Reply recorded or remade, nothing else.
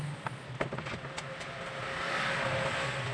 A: recorded